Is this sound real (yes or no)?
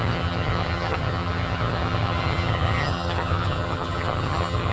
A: no